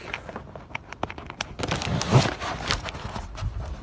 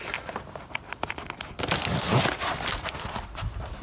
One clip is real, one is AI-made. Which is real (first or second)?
first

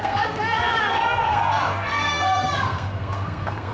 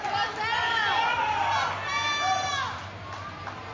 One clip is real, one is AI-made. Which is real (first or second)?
second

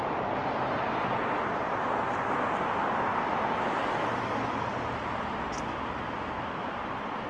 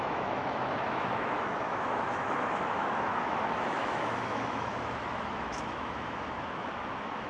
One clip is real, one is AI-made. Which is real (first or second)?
first